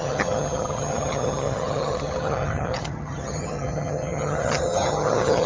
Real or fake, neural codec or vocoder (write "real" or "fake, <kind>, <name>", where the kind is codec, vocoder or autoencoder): fake, vocoder, HiFi-GAN